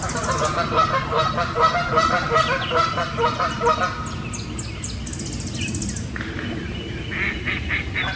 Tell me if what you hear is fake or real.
real